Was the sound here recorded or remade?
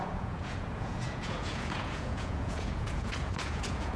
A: remade